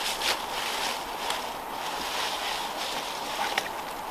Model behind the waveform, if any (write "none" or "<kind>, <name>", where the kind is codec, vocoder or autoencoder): none